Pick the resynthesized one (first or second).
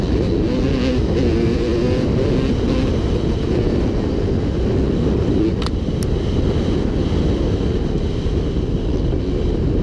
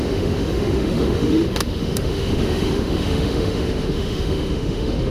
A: second